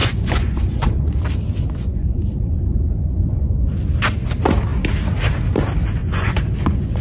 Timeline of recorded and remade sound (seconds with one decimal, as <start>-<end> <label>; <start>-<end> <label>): 0.0-1.2 remade; 1.2-1.8 recorded; 1.8-3.5 remade; 3.5-6.0 recorded; 6.0-7.0 remade